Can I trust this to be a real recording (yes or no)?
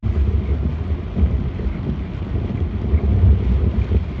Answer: yes